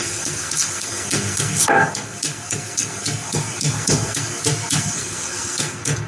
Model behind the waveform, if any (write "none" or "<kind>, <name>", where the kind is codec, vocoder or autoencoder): codec, SNAC